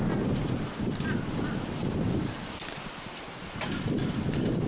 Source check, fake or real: real